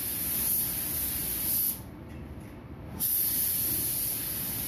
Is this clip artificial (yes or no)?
no